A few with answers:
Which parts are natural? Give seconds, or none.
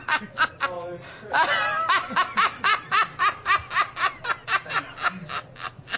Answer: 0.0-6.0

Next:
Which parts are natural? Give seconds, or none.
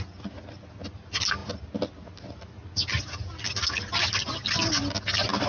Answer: 0.0-5.5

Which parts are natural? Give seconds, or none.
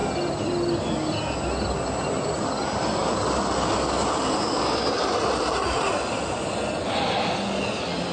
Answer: 0.0-8.1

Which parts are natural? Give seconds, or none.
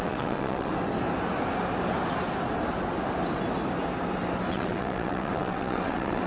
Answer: 0.7-4.5